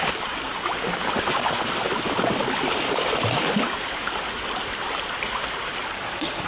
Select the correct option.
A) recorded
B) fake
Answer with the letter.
A